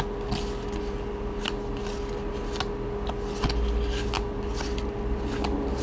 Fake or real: real